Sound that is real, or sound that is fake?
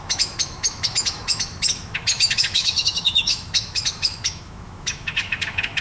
fake